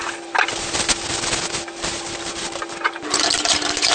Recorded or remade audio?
recorded